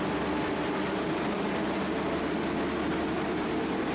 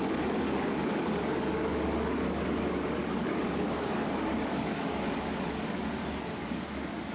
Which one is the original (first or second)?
first